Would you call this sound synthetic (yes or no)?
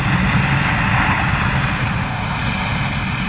no